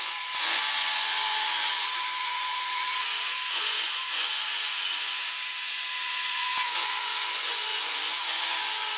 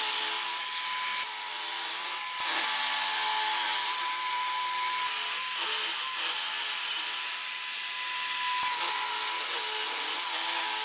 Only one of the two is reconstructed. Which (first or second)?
first